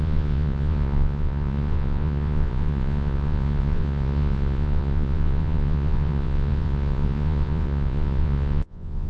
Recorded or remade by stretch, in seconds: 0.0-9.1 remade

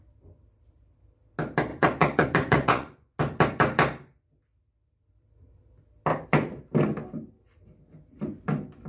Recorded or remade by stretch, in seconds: 0.0-1.7 recorded; 1.7-3.2 remade; 3.2-8.9 recorded

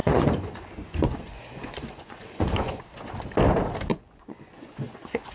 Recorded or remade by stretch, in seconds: 0.0-2.8 remade; 2.8-3.9 recorded; 3.9-5.3 remade

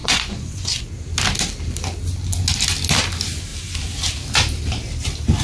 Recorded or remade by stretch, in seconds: 0.0-0.8 remade; 0.8-5.4 recorded

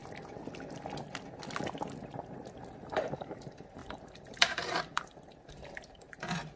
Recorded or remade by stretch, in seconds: 0.0-2.7 recorded; 2.7-6.6 remade

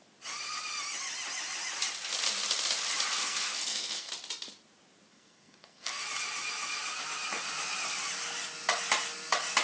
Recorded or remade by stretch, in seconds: 0.0-3.2 recorded; 3.2-4.1 remade; 4.1-5.1 recorded; 5.1-6.0 remade; 6.0-9.6 recorded

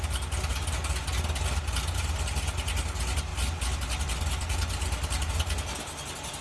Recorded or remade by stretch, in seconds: 0.0-6.4 recorded

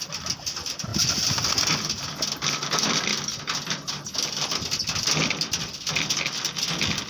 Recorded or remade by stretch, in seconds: 0.0-7.1 recorded